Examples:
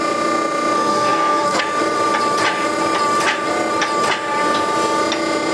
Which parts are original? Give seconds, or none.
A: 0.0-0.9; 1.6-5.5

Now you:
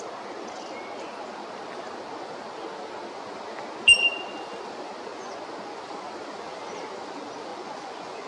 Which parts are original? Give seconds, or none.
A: 0.0-5.1; 5.8-7.5

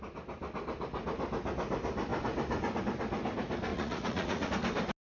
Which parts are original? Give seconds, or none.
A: 0.0-3.7; 4.5-5.1

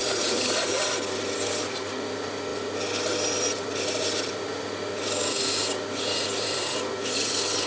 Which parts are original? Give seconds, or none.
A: 0.6-7.7

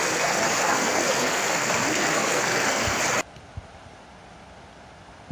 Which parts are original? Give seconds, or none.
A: 3.0-5.3

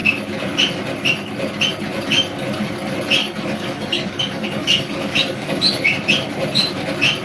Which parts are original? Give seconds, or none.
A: 0.0-3.2; 5.6-7.2